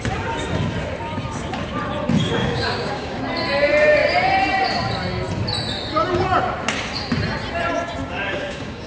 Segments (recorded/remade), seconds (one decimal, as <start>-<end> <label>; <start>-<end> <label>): 0.0-2.4 recorded; 2.4-3.2 remade; 3.2-8.0 recorded; 8.0-8.9 remade